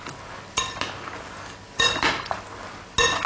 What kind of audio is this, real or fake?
real